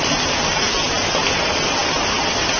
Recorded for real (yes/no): yes